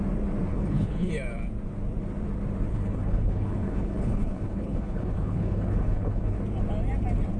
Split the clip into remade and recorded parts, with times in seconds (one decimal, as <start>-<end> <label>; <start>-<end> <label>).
0.0-0.5 recorded; 0.5-1.1 remade; 1.1-2.7 recorded; 2.7-6.4 remade; 6.4-7.4 recorded